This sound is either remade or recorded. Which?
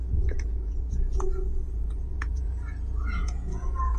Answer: remade